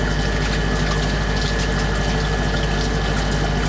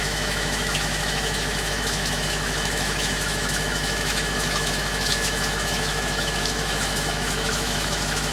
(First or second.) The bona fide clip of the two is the first